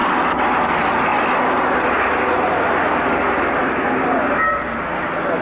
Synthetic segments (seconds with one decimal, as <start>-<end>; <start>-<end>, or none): none